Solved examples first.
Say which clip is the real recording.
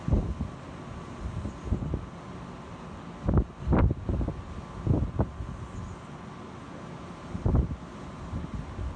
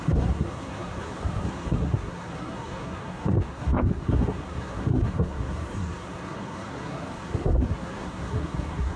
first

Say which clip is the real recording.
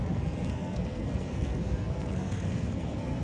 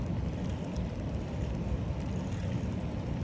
second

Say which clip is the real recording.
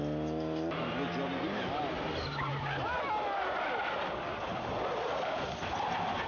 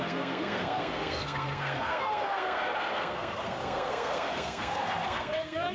first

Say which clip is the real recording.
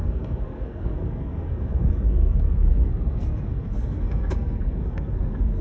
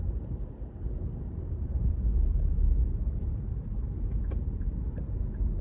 second